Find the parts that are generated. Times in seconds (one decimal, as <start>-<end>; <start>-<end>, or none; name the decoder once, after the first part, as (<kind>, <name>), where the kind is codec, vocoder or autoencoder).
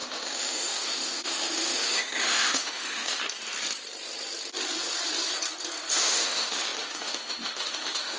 0.0-3.2 (autoencoder, DAC-VAE); 5.9-8.2